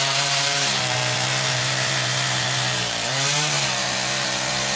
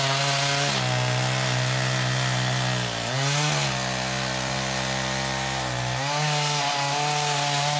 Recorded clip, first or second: second